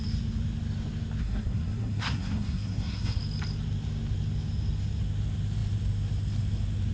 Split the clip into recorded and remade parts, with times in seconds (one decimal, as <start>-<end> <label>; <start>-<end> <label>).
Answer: 0.0-1.2 recorded; 1.2-3.2 remade; 3.2-6.9 recorded